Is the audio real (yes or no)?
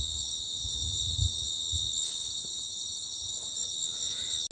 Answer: yes